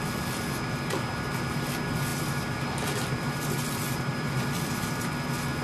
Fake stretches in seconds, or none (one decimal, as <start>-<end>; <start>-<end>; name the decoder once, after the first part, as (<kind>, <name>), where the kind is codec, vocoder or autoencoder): 2.1-4.6 (vocoder, BigVGAN v2)